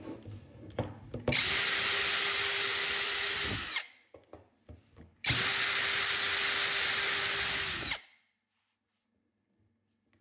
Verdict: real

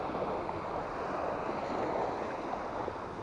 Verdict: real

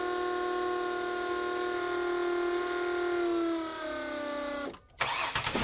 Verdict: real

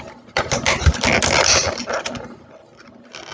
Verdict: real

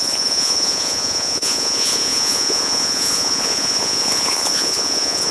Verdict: fake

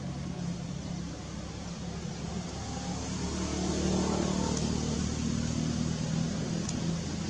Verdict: real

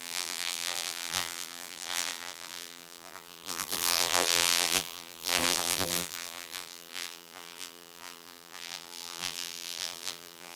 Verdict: fake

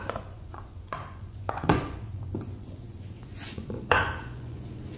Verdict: fake